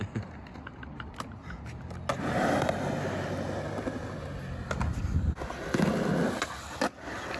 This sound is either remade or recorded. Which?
recorded